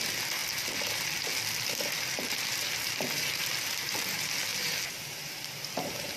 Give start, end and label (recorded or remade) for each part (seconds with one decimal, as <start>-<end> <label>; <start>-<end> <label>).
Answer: 0.0-6.2 recorded